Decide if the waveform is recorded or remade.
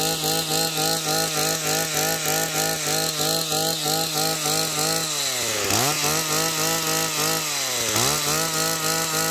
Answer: recorded